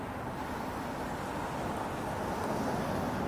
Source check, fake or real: real